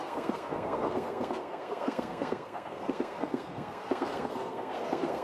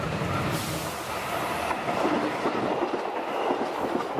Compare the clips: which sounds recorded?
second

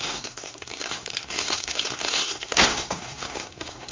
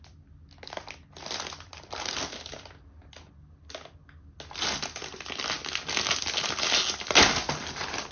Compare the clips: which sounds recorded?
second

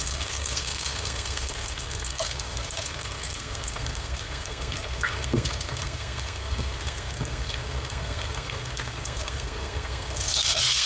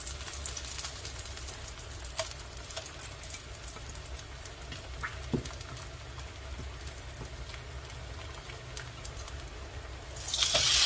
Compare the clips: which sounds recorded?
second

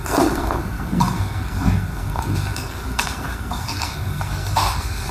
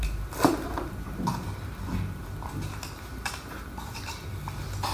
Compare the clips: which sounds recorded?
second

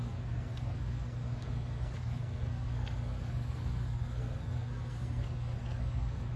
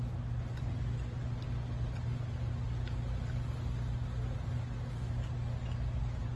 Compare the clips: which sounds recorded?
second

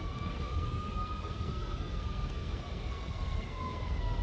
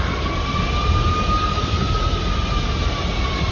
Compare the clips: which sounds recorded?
second